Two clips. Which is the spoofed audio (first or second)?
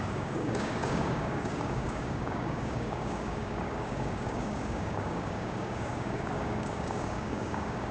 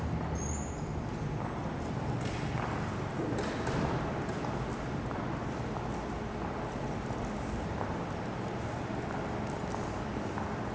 first